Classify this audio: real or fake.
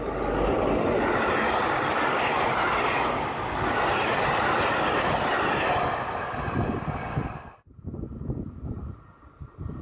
real